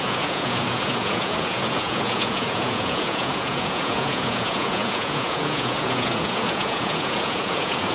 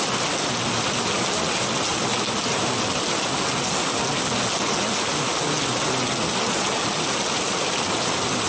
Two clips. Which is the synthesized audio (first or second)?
first